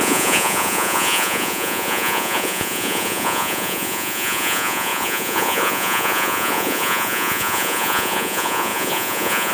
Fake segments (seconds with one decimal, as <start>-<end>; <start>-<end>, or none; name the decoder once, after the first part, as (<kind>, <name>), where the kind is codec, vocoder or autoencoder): 0.0-9.5 (vocoder, Vocos)